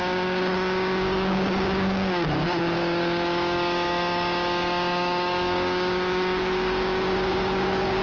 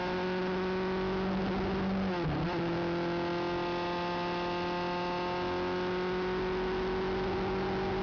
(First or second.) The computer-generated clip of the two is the first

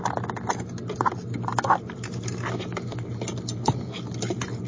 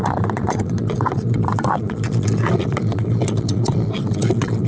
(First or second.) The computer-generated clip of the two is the second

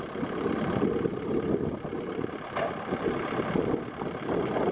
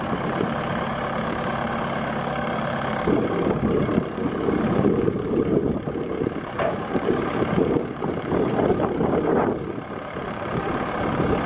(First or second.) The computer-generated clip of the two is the second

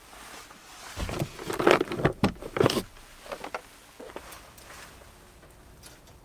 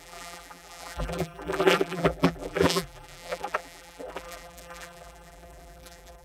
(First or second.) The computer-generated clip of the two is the second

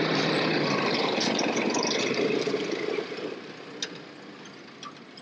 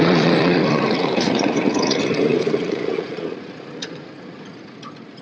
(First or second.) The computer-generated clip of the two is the second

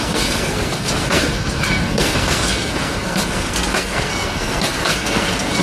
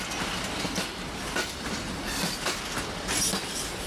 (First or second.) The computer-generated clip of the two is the first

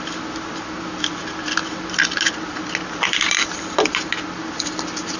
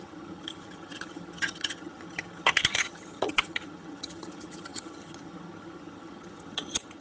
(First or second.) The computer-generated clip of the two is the second